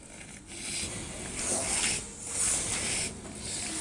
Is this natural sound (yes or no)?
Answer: yes